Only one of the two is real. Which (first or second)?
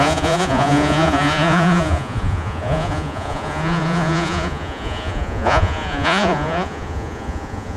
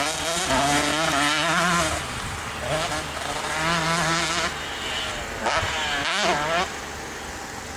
second